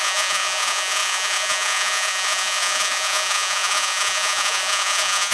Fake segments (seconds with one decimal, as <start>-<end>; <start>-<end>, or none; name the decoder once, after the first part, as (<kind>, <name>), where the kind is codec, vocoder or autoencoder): 0.0-5.3 (vocoder, Vocos)